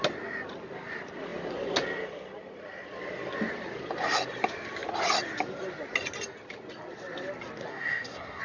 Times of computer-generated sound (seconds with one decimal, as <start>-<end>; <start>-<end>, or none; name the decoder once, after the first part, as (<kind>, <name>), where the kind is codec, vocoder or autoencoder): 7.7-8.4 (codec, SNAC)

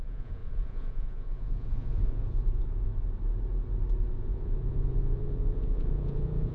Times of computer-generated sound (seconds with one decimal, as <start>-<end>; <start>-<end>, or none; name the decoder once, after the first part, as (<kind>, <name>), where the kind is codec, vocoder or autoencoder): 0.0-2.9 (vocoder, Vocos); 4.2-6.5

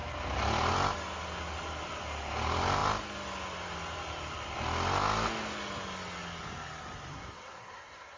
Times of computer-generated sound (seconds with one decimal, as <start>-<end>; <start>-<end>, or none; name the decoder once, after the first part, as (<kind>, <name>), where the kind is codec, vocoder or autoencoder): 7.1-8.2 (codec, SNAC)

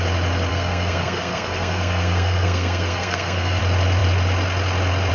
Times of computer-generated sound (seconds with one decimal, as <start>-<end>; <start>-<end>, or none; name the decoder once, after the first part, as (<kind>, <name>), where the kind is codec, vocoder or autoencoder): 0.5-3.6 (codec, SNAC)